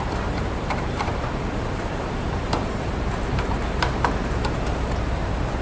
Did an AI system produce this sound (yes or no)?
yes